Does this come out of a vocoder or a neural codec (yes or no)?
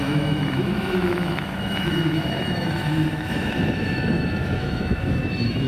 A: yes